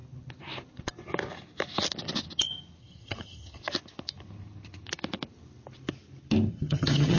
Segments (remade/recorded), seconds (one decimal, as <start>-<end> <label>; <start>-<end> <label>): 0.0-2.8 recorded; 2.8-3.6 remade; 3.6-6.5 recorded; 6.5-7.2 remade